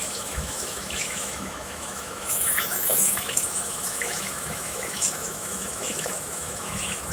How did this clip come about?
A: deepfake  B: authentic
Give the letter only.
A